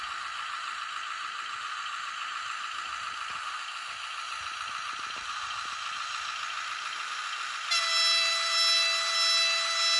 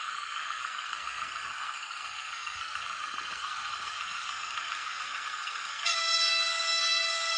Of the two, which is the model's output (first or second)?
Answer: second